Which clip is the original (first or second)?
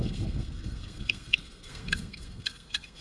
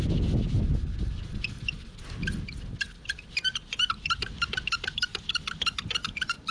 second